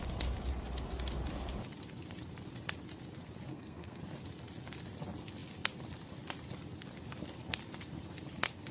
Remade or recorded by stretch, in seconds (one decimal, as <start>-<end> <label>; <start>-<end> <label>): 0.0-3.5 recorded; 3.5-4.0 remade; 4.0-8.7 recorded

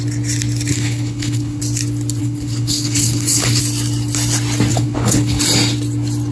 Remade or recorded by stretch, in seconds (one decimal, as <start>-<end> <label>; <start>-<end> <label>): 0.0-0.7 recorded; 0.7-1.6 remade; 1.6-2.2 recorded; 2.2-3.6 remade; 3.6-4.7 recorded; 4.7-5.4 remade; 5.4-6.3 recorded

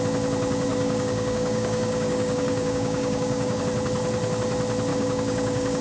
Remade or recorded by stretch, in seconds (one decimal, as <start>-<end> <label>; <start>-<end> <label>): 0.0-0.7 recorded; 0.7-3.6 remade; 3.6-4.9 recorded; 4.9-5.8 remade

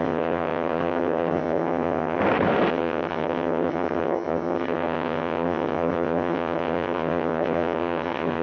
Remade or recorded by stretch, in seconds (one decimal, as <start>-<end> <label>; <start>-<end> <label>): 0.0-2.2 remade; 2.2-2.7 recorded; 2.7-8.4 remade

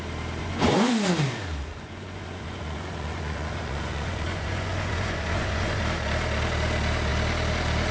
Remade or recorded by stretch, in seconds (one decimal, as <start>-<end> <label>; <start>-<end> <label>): 0.0-0.4 recorded; 0.4-0.9 remade; 0.9-1.7 recorded; 1.7-5.8 remade; 5.8-7.9 recorded